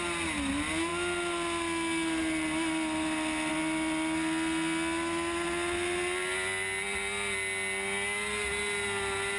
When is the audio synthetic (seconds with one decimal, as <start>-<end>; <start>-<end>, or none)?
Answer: none